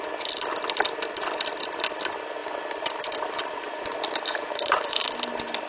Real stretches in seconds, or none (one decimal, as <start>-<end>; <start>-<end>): 0.0-2.4; 5.0-5.7